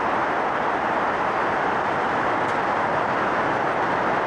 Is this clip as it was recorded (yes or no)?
yes